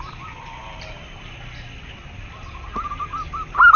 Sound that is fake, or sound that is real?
real